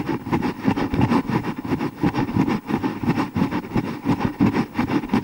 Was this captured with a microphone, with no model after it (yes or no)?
yes